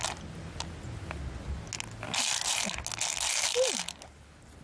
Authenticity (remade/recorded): recorded